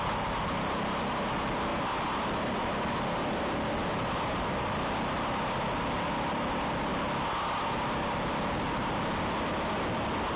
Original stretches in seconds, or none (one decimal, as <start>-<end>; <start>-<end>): 0.0-10.4